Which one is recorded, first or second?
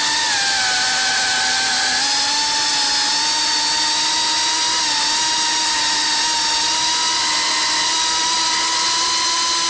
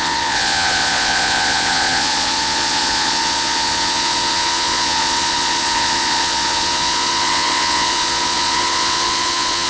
first